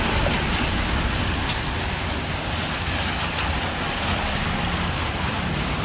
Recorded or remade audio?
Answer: recorded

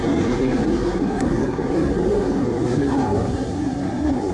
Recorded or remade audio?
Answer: remade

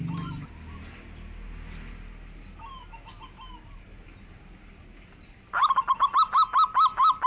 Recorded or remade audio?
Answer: recorded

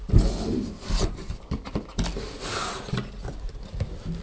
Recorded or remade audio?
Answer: recorded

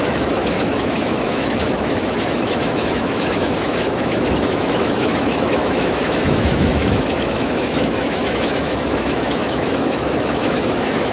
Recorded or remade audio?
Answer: remade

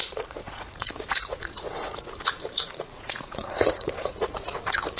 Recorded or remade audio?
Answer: remade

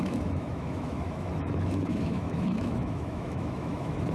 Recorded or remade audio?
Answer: remade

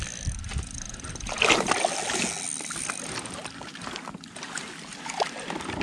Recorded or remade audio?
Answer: recorded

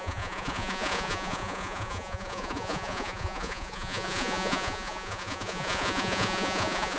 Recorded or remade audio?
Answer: remade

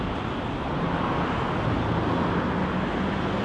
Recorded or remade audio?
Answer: recorded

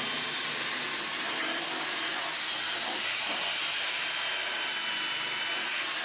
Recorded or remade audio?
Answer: recorded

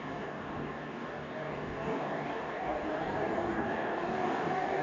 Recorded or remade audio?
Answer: remade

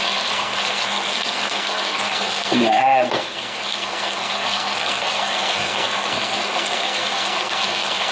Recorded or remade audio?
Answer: remade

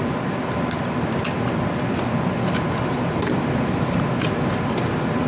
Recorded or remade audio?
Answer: recorded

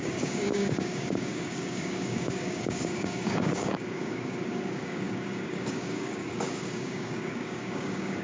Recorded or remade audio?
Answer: remade